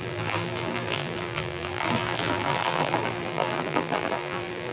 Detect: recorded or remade remade